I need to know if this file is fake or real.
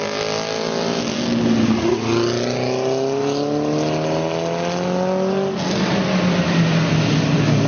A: real